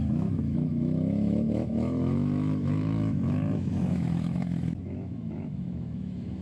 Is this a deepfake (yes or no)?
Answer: yes